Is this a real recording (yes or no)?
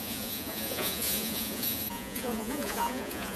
no